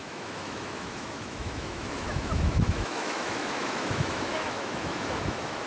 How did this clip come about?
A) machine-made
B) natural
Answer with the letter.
A